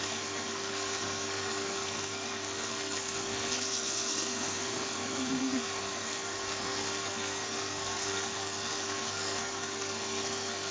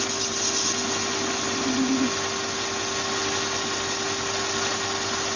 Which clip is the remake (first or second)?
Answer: first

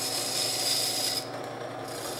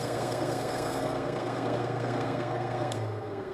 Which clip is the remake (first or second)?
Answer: second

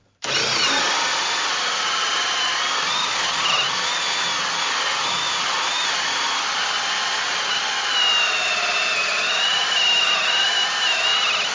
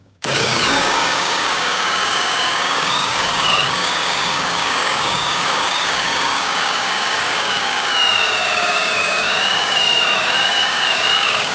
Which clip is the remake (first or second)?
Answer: second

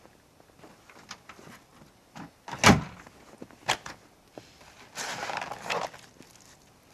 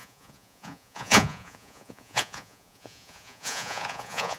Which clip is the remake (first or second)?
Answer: second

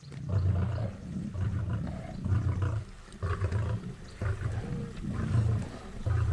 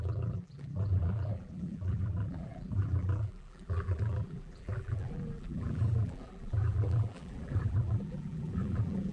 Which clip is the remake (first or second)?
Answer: second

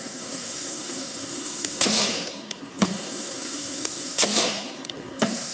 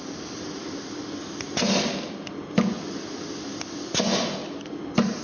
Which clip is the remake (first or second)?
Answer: first